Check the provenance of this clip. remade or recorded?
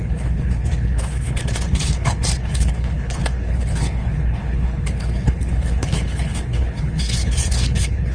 remade